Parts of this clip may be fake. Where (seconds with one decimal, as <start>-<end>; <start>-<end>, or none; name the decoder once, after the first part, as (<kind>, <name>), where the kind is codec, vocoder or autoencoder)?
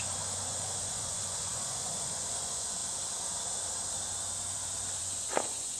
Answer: 0.0-2.8 (vocoder, Vocos); 5.0-5.8